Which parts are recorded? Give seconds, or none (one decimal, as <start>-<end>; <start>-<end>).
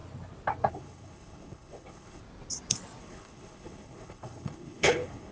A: 0.0-0.7; 2.2-3.0